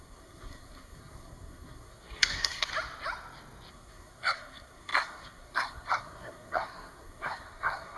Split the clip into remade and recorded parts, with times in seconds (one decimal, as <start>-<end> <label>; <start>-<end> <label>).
0.0-2.7 remade; 2.7-3.7 recorded; 3.7-8.0 remade

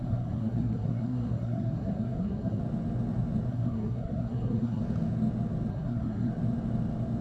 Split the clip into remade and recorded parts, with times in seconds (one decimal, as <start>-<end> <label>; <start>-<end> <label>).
0.0-2.6 remade; 2.6-3.5 recorded; 3.5-4.8 remade; 4.8-5.7 recorded; 5.7-6.3 remade; 6.3-7.2 recorded